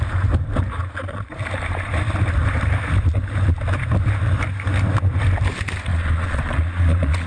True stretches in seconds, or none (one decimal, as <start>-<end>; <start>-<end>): 0.0-5.9